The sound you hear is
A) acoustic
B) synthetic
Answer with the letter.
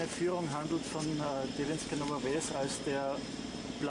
A